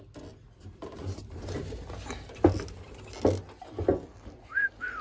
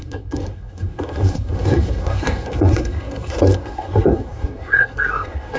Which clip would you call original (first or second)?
first